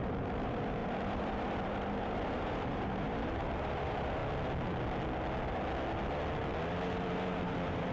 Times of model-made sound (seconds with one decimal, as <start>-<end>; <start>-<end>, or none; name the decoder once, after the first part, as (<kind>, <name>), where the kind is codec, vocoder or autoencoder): 0.0-4.2 (vocoder, BigVGAN v2); 6.7-7.9